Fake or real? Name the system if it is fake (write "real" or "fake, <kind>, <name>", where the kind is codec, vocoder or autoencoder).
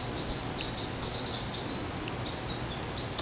real